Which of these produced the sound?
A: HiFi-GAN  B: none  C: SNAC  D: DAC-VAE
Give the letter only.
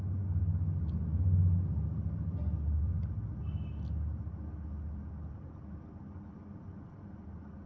B